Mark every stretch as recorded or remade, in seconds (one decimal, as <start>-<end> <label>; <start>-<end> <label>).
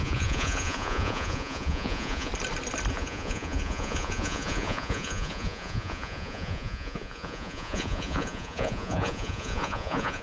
0.0-2.3 remade; 2.3-2.9 recorded; 2.9-10.2 remade